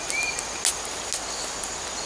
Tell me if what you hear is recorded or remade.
recorded